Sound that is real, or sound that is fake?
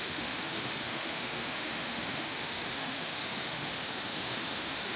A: fake